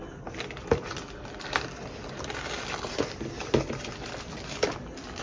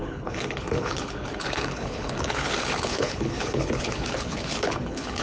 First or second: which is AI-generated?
second